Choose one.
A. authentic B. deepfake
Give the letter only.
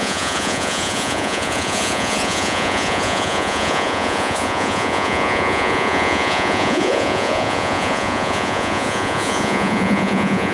B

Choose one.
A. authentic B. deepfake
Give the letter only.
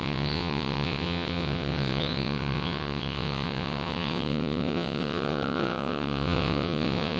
B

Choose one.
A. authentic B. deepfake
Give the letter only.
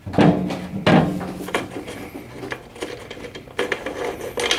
A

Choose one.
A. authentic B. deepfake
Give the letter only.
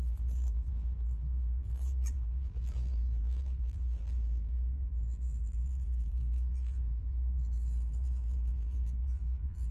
B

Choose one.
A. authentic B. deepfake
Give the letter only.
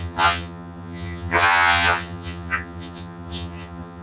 B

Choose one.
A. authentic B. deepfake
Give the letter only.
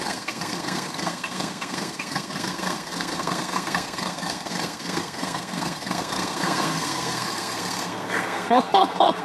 B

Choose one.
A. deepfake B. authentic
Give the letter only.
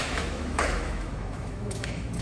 A